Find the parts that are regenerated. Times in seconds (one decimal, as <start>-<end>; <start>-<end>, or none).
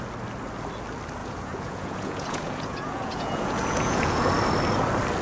1.2-4.3